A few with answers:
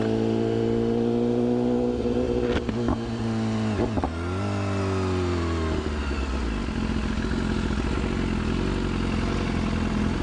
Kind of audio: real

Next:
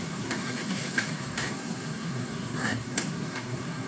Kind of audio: fake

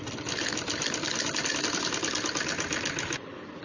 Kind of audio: real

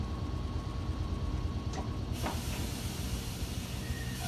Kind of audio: fake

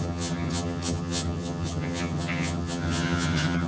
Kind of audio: fake